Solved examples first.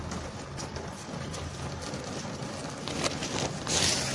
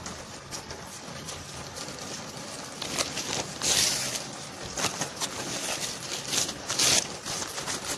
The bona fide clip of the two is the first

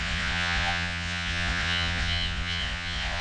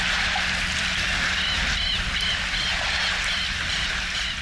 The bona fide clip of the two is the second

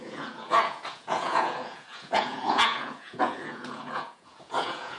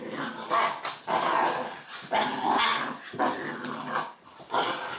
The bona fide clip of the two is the second